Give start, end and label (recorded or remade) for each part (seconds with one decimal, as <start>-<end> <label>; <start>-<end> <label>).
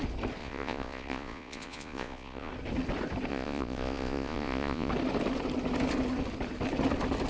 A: 0.0-0.4 recorded; 0.4-2.5 remade; 2.5-3.3 recorded; 3.3-4.9 remade; 4.9-7.3 recorded